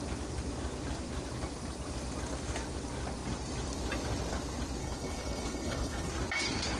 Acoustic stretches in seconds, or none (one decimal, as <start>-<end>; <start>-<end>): 0.0-4.8; 6.1-6.8